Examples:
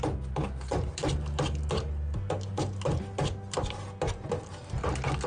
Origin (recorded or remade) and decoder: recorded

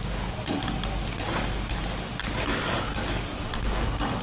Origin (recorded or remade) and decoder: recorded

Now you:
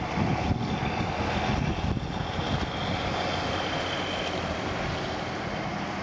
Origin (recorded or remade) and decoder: recorded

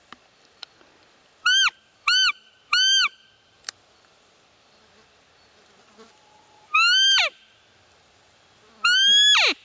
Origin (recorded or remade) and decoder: recorded